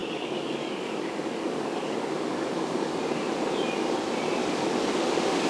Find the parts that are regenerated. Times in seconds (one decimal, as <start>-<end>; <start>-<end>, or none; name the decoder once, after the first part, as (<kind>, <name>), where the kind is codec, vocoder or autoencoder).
0.0-3.0 (codec, DAC); 4.4-4.9